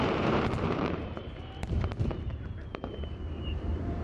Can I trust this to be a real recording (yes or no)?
no